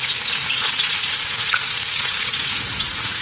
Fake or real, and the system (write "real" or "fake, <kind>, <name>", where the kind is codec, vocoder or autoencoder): fake, vocoder, Vocos